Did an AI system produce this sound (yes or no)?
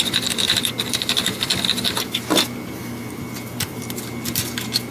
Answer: no